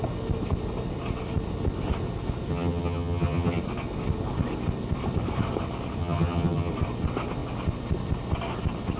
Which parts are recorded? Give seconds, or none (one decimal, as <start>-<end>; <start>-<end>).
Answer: 0.0-2.5; 3.6-6.0; 6.7-9.0